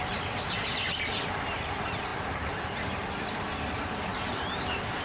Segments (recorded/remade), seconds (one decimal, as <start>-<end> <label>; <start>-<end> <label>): 0.0-4.1 recorded; 4.1-5.0 remade